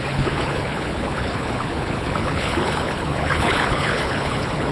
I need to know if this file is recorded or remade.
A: remade